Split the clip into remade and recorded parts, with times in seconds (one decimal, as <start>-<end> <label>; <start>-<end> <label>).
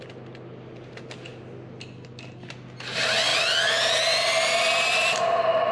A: 0.0-5.7 recorded